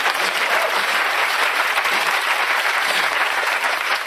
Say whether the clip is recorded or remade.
remade